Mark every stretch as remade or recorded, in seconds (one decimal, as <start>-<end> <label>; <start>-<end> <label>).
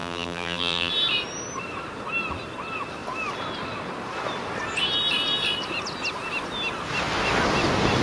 0.0-0.9 remade; 0.9-8.0 recorded